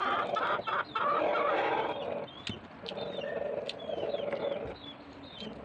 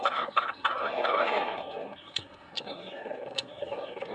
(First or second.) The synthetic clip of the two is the second